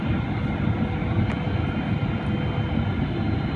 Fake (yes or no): no